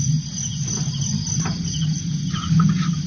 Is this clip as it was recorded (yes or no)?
yes